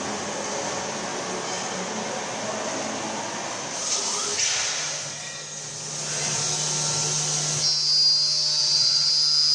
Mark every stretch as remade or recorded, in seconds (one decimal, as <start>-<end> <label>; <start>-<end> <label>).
0.0-8.6 recorded; 8.6-9.1 remade; 9.1-9.5 recorded